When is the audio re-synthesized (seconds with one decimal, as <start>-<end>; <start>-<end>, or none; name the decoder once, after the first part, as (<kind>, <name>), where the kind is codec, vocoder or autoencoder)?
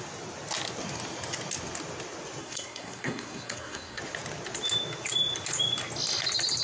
2.4-4.0 (codec, SNAC)